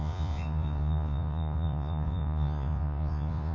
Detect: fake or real fake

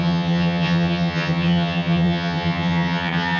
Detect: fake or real fake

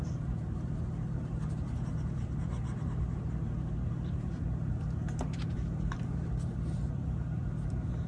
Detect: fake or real fake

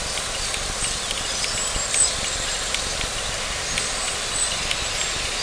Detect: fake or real real